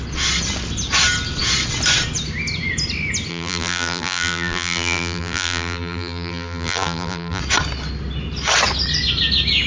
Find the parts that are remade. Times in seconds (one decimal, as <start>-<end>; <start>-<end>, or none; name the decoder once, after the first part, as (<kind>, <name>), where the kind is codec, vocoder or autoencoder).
3.3-7.4 (vocoder, BigVGAN v2)

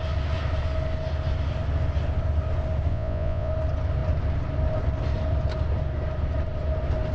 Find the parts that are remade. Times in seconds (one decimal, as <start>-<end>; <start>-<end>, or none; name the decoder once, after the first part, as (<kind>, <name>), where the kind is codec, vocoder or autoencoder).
2.9-3.5 (vocoder, Vocos)

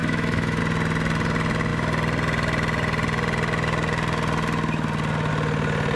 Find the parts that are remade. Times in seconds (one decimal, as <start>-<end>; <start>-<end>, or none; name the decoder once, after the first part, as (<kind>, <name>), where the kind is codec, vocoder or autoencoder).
0.0-0.6 (autoencoder, DAC-VAE)

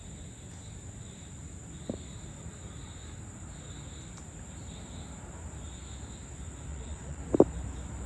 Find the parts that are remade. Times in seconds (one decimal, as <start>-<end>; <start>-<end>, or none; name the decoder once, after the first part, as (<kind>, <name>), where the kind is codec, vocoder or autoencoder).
6.7-7.2 (vocoder, Vocos)

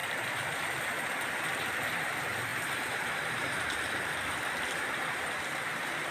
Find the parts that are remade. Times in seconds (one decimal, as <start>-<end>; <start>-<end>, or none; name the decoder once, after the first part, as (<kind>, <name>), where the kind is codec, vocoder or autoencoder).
0.0-6.1 (vocoder, BigVGAN v2)